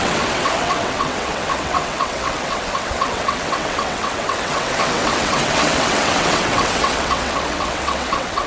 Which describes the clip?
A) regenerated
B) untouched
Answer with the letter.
A